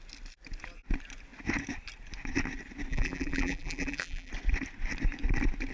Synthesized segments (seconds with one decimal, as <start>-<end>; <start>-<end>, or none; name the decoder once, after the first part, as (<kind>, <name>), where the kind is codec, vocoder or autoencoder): 2.9-4.3 (vocoder, BigVGAN v2)